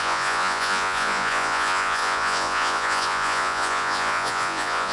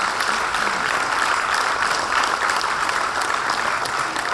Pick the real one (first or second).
second